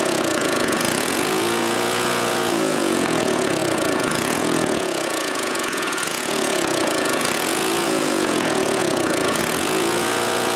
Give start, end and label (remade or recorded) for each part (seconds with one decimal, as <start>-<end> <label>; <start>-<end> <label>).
0.0-10.6 remade